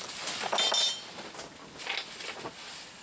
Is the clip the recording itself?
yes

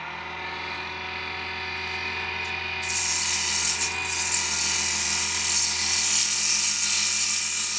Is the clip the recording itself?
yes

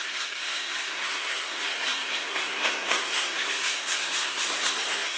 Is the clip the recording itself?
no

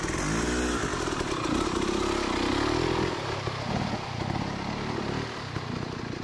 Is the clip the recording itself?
yes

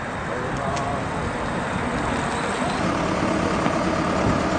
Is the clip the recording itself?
yes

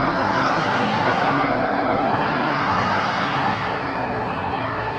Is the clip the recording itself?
no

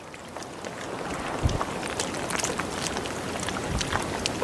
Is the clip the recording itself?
yes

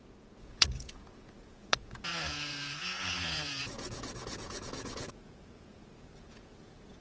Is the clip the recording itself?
no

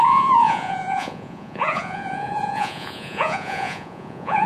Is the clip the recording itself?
no